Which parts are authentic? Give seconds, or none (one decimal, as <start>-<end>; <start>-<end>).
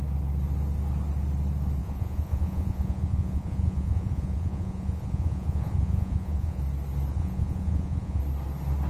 0.0-1.8; 6.6-7.1; 8.2-8.9